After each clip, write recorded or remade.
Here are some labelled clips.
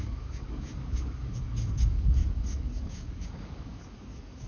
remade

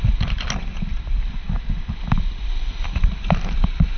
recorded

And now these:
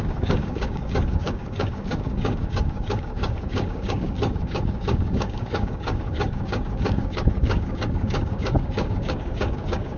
remade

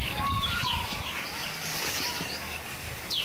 remade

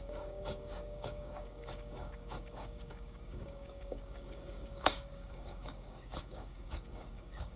remade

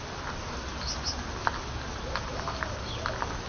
recorded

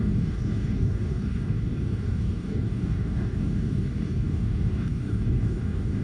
remade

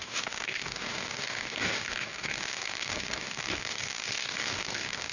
remade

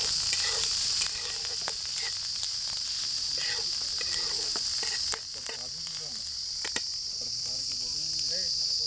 recorded